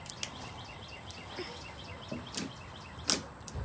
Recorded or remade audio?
recorded